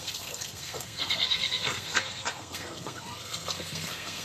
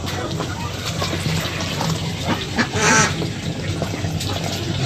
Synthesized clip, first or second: first